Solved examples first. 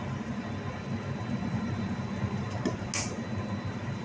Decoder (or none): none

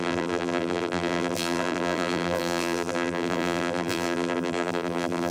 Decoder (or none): vocoder, BigVGAN v2